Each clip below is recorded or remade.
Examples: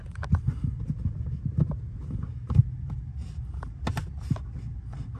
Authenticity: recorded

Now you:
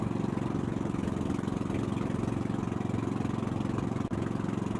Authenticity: recorded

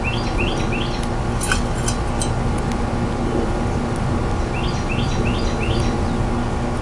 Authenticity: recorded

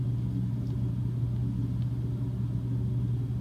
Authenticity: recorded